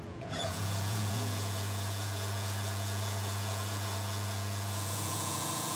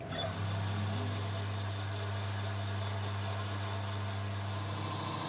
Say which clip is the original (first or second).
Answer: second